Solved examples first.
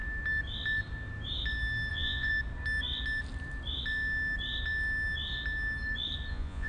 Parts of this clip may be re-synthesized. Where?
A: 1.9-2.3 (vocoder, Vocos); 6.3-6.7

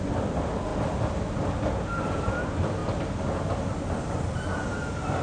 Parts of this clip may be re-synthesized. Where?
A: none

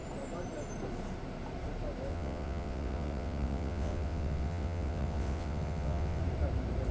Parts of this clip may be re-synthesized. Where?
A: 2.1-6.2 (vocoder, WaveNeXt)

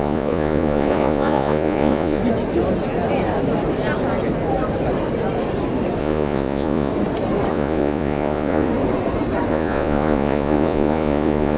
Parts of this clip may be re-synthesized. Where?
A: 0.0-2.2 (vocoder, Vocos); 6.0-6.9; 7.5-8.7; 9.5-11.6

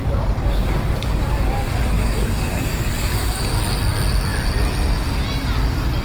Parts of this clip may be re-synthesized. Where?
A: 0.0-3.6 (codec, DAC)

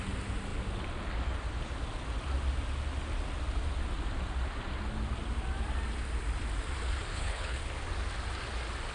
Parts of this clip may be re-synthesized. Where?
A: 7.1-7.6 (codec, HILCodec)

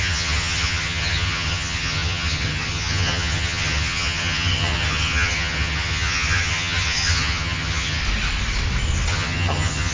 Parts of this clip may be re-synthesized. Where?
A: 0.0-8.0 (vocoder, HiFi-GAN); 9.1-9.9